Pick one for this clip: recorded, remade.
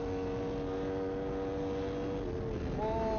recorded